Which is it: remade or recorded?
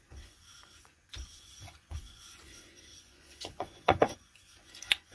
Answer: remade